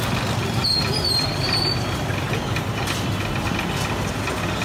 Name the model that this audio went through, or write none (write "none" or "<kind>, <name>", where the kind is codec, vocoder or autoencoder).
none